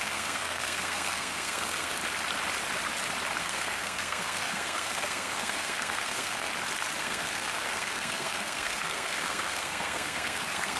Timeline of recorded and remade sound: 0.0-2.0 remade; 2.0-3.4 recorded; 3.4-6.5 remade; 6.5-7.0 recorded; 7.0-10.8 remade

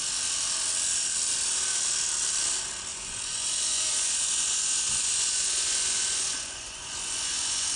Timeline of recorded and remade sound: 0.0-2.9 recorded; 2.9-7.8 remade

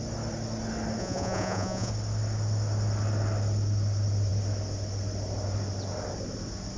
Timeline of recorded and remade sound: 0.0-1.0 recorded; 1.0-1.9 remade; 1.9-6.8 recorded

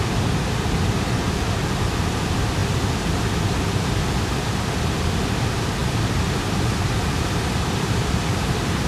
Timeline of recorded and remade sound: 0.0-5.8 recorded; 5.8-8.9 remade

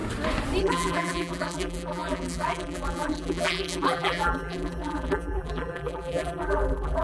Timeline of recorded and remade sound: 0.0-0.6 recorded; 0.6-7.0 remade

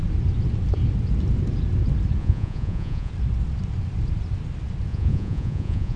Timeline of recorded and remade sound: 0.0-2.2 recorded; 2.2-3.1 remade; 3.1-4.9 recorded; 4.9-6.0 remade

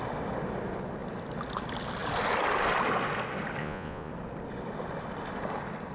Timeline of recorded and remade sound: 0.0-3.6 recorded; 3.6-4.1 remade; 4.1-5.9 recorded

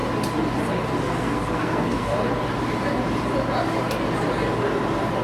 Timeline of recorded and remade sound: 0.0-1.0 recorded; 1.0-2.1 remade; 2.1-5.2 recorded